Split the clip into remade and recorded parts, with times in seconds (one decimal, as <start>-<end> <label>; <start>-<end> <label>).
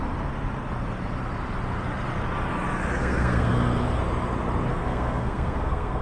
0.0-3.0 recorded; 3.0-3.5 remade; 3.5-4.7 recorded; 4.7-6.0 remade